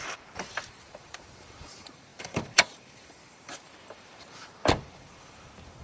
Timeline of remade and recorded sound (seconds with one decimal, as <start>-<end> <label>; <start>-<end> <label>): 0.0-5.8 remade